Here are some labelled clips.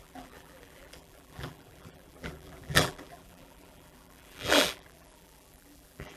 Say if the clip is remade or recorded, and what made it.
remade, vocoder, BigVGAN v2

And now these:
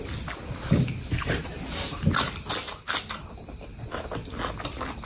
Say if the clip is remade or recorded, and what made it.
recorded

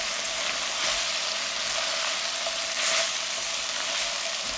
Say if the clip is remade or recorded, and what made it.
recorded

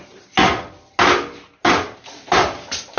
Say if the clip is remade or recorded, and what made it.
recorded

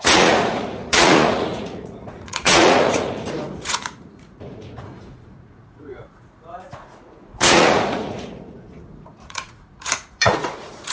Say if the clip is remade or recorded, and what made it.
remade, vocoder, Vocos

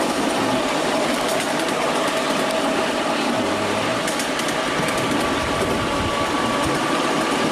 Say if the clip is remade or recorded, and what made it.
recorded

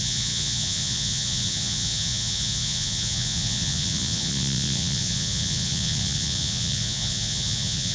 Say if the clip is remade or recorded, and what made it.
remade, vocoder, Vocos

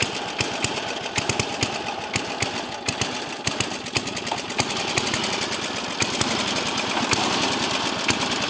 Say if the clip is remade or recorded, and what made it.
recorded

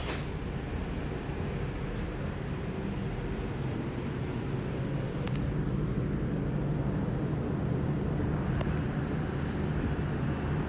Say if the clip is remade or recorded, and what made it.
recorded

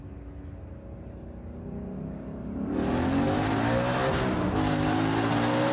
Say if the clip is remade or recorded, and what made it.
recorded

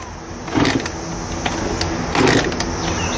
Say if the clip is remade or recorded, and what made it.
recorded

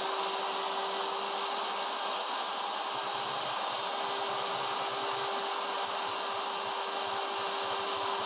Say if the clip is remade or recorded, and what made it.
recorded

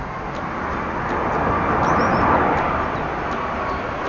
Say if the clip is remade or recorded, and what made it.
recorded